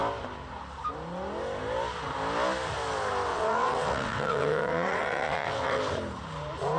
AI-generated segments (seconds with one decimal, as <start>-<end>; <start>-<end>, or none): 3.3-5.8